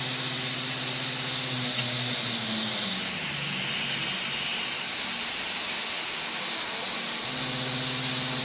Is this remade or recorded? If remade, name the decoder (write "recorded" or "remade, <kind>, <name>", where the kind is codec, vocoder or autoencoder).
recorded